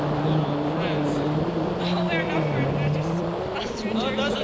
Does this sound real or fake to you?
real